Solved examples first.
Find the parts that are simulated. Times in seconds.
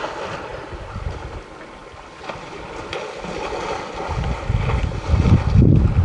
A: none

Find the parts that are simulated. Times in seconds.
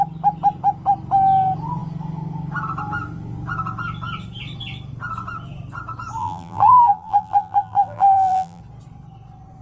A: 6.2-8.6 (vocoder, BigVGAN v2)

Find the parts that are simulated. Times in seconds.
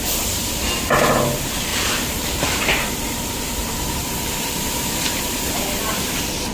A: 1.7-5.6 (vocoder, BigVGAN v2)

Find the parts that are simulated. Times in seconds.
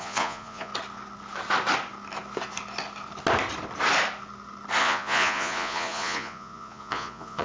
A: 0.0-0.7 (vocoder, Vocos); 4.8-7.4